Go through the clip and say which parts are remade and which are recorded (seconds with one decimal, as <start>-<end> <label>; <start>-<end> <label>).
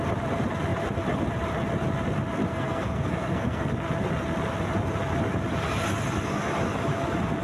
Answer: 0.0-2.5 recorded; 2.5-3.7 remade; 3.7-7.4 recorded